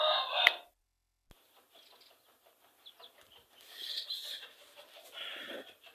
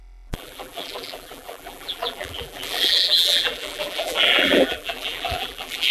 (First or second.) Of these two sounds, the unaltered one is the first